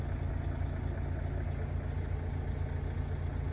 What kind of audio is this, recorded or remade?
recorded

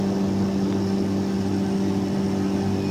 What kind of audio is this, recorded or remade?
recorded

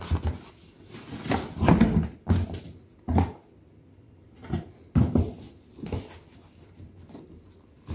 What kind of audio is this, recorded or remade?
recorded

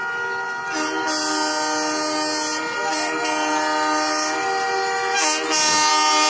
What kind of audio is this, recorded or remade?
recorded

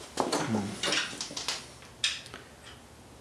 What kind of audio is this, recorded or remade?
recorded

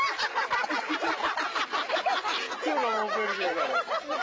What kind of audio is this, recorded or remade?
recorded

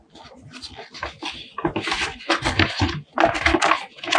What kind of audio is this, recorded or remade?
recorded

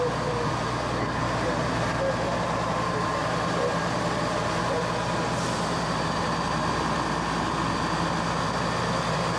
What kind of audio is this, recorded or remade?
recorded